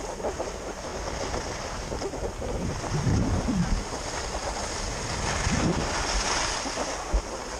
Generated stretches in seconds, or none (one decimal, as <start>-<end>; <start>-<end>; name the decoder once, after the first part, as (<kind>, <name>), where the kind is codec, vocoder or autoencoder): none